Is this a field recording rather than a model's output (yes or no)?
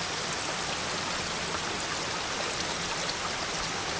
yes